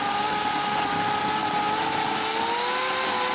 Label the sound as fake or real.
real